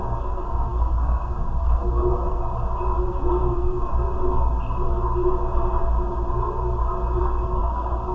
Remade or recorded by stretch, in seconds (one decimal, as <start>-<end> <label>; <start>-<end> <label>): 0.0-2.4 remade; 2.4-3.1 recorded; 3.1-3.9 remade; 3.9-7.2 recorded; 7.2-8.1 remade